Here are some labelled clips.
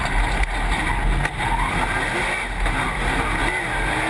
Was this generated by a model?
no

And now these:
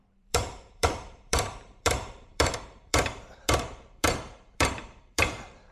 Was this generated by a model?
yes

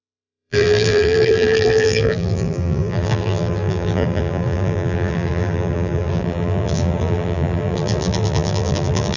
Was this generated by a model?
yes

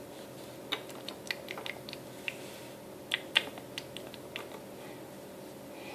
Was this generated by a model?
no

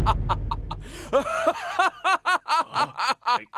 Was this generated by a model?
no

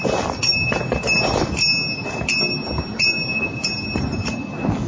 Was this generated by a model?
no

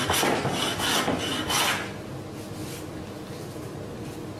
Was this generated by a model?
no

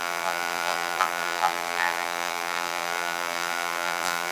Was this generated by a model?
yes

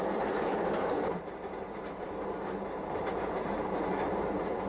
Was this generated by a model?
yes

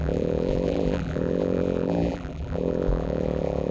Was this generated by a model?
yes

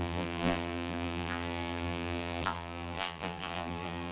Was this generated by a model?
yes